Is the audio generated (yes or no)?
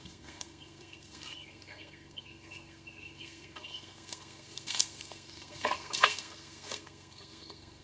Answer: yes